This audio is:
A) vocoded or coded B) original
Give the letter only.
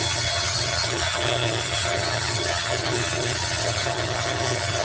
A